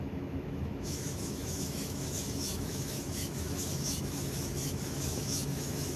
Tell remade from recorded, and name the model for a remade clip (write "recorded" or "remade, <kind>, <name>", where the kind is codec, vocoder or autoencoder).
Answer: remade, autoencoder, DAC-VAE